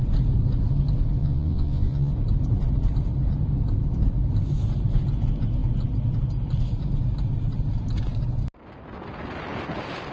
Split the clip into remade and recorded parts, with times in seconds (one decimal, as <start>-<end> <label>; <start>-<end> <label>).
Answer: 0.0-1.2 recorded; 1.2-2.1 remade; 2.1-10.1 recorded